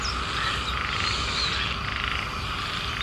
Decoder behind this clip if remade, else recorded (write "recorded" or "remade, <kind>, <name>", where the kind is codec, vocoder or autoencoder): recorded